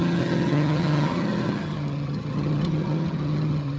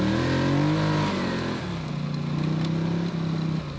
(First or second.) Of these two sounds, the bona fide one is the second